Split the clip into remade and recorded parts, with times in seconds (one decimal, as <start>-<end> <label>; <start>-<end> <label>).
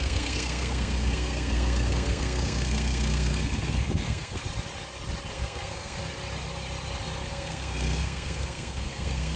0.0-4.4 remade; 4.4-5.3 recorded; 5.3-6.0 remade; 6.0-7.3 recorded; 7.3-9.4 remade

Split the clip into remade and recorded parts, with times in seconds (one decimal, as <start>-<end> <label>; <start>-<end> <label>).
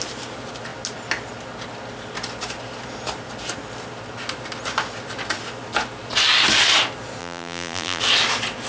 0.0-7.2 recorded; 7.2-8.0 remade; 8.0-8.7 recorded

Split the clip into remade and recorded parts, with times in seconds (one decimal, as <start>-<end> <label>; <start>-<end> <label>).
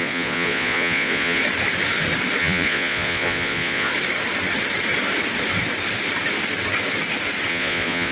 0.0-1.4 remade; 1.4-2.4 recorded; 2.4-3.9 remade; 3.9-7.5 recorded; 7.5-8.1 remade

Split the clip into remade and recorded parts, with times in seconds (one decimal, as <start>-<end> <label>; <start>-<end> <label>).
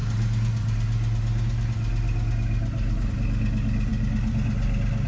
0.0-5.1 recorded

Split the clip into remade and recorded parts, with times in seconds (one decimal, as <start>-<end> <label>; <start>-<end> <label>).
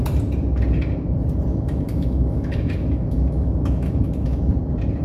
0.0-1.5 recorded; 1.5-4.5 remade; 4.5-5.0 recorded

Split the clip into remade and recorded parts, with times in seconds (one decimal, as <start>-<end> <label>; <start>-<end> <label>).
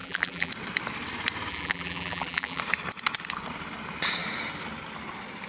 0.0-0.5 remade; 0.5-1.5 recorded; 1.5-2.6 remade; 2.6-5.5 recorded